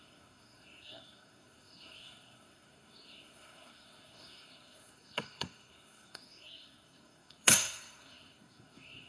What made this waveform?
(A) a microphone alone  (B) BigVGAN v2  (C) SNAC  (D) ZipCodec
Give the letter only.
C